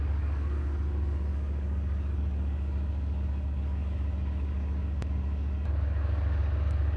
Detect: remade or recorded remade